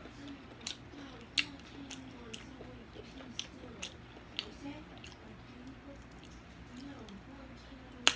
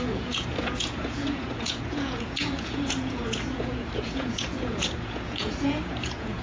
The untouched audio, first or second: first